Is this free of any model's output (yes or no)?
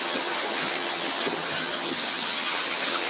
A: no